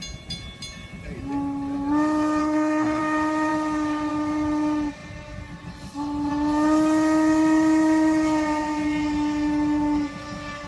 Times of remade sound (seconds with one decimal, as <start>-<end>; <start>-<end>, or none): 2.4-3.0